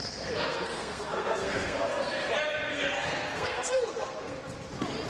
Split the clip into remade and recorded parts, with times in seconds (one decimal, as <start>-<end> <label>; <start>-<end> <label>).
0.0-2.3 remade; 2.3-2.7 recorded; 2.7-4.4 remade; 4.4-5.1 recorded